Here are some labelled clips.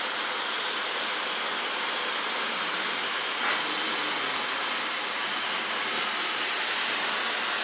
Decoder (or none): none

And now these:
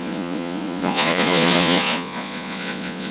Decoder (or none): vocoder, Vocos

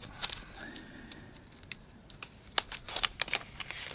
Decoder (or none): none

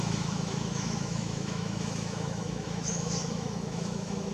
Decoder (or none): autoencoder, DAC-VAE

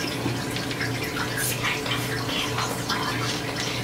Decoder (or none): none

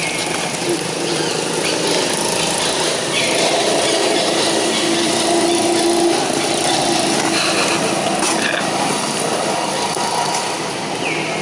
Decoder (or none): none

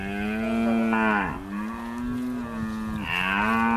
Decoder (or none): none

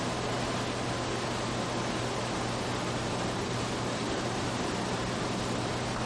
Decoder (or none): none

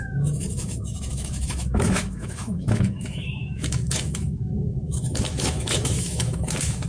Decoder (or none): autoencoder, DAC-VAE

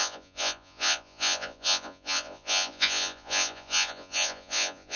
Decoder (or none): vocoder, Vocos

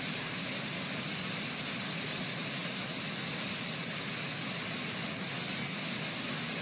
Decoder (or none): none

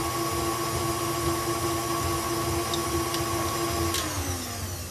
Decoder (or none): none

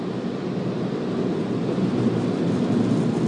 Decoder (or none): none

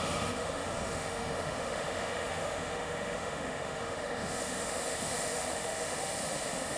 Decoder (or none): autoencoder, DAC-VAE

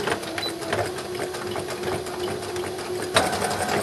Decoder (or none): none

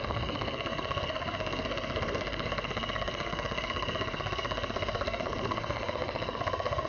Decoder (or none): codec, SNAC